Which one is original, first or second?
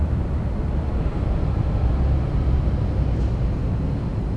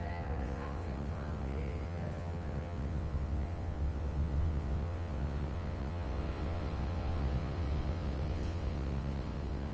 first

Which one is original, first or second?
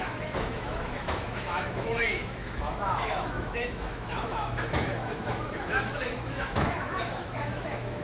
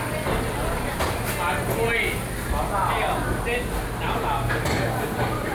second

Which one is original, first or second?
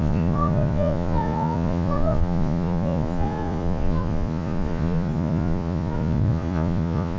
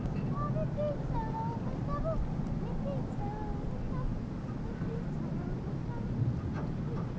second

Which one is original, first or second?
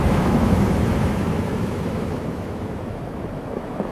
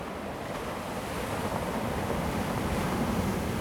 second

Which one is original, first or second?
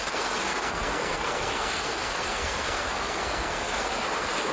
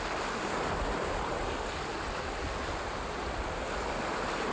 second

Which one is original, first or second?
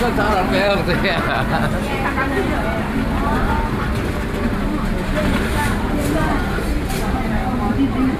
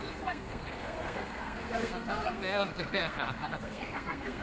first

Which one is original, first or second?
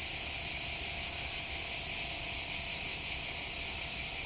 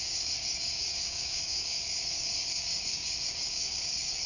first